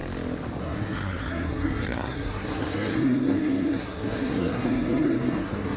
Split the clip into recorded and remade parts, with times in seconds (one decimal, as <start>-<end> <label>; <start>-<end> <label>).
0.0-0.6 recorded; 0.6-5.8 remade